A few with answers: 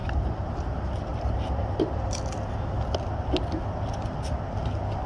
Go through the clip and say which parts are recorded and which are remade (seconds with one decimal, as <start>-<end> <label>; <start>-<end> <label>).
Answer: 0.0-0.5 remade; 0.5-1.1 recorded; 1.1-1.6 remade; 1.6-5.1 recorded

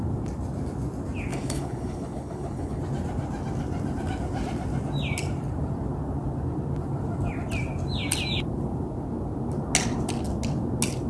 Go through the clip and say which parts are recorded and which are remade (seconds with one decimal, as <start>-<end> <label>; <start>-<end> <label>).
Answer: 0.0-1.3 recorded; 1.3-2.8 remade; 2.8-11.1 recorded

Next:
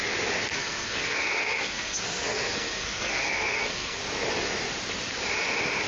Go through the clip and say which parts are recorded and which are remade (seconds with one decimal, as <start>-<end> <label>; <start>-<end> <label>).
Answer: 0.0-0.5 recorded; 0.5-4.0 remade; 4.0-5.9 recorded

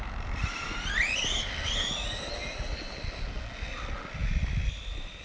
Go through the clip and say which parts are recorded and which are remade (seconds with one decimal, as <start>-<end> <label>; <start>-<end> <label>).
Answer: 0.0-5.2 recorded